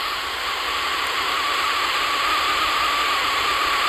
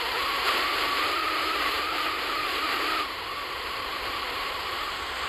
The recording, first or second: first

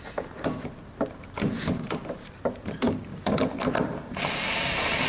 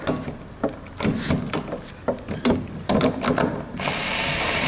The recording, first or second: second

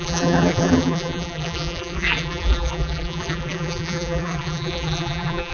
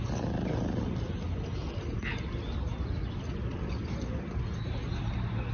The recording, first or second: second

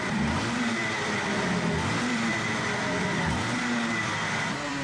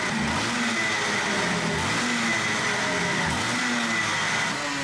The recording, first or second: second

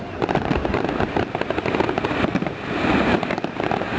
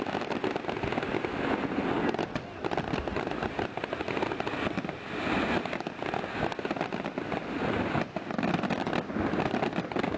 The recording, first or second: second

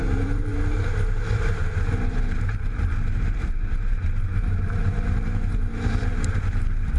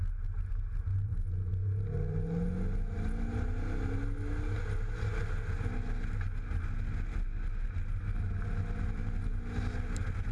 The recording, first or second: second